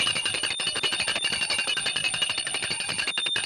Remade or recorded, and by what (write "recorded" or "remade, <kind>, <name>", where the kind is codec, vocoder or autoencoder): remade, vocoder, BigVGAN v2